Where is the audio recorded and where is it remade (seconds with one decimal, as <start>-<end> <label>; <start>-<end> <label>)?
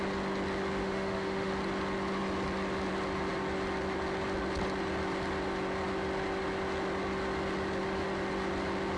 0.0-0.8 recorded; 0.8-1.5 remade; 1.5-9.0 recorded